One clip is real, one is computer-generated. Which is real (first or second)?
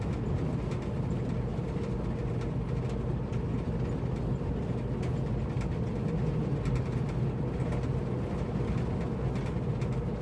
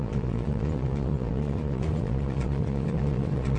first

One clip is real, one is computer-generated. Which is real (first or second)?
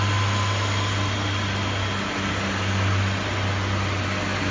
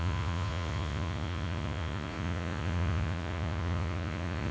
first